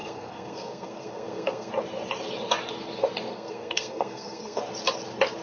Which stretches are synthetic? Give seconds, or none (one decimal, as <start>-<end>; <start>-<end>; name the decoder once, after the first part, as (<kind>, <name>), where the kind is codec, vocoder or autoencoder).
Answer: 0.0-1.7 (codec, SNAC); 3.3-4.6